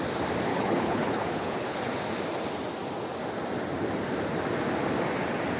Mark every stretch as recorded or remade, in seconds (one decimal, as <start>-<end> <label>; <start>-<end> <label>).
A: 0.0-0.5 recorded; 0.5-1.9 remade; 1.9-5.6 recorded